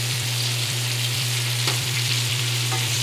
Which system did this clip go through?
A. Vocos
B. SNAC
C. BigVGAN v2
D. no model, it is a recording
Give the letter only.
C